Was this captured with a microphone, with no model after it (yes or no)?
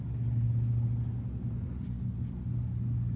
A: yes